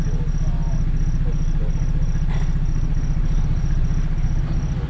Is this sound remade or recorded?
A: recorded